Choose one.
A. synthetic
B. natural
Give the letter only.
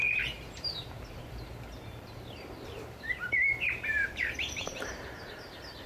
A